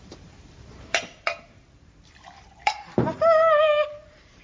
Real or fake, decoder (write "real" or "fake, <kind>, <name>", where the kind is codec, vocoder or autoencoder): fake, vocoder, BigVGAN v2